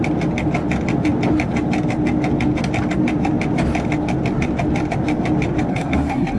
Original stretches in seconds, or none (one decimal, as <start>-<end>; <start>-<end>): 0.0-5.7

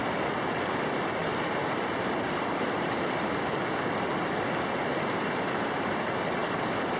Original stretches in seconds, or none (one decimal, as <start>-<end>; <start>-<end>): 0.0-1.2; 3.5-4.8; 5.6-6.4

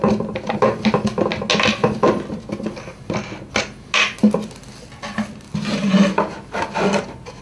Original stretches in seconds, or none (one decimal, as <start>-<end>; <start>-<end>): 0.0-7.4

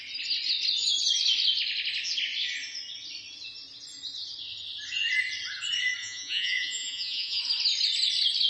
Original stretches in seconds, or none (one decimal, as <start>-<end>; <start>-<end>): 0.0-6.0; 7.4-8.5